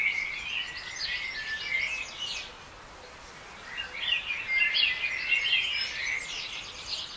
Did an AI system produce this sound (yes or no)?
no